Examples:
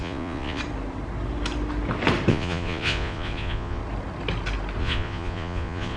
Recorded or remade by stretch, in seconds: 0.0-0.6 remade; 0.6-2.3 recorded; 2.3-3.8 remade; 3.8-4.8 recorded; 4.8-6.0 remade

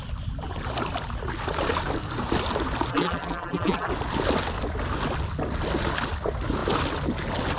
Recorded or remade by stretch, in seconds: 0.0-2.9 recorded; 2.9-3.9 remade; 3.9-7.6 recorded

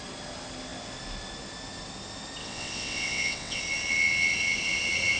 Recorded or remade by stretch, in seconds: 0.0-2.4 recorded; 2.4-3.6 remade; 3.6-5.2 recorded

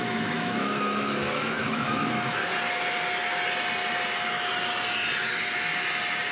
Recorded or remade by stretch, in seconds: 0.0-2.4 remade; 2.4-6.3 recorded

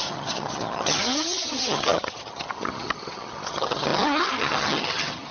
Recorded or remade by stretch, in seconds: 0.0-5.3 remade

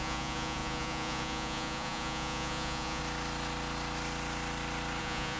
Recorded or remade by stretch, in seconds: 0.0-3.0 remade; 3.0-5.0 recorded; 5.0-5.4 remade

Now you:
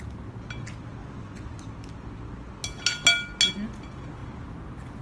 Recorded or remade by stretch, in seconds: 0.0-1.0 recorded; 1.0-1.6 remade; 1.6-5.0 recorded